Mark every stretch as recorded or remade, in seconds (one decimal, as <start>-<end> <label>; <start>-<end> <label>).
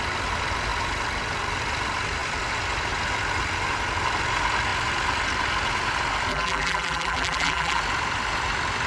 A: 0.0-6.3 recorded; 6.3-7.8 remade; 7.8-8.9 recorded